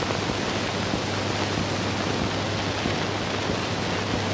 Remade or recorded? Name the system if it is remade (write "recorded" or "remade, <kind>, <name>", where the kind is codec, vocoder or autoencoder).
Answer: recorded